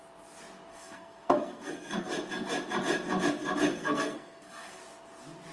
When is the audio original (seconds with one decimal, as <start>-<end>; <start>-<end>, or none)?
0.0-0.7; 2.1-3.7; 4.8-5.5